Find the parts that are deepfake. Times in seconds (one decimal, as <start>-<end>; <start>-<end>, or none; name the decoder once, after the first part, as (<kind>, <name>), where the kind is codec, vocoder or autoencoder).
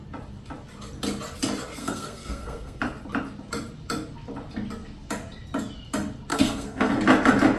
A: 1.8-2.8 (codec, SNAC); 6.3-6.9